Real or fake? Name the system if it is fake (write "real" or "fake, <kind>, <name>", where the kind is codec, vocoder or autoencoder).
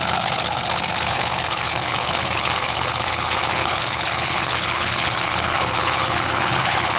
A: fake, codec, HILCodec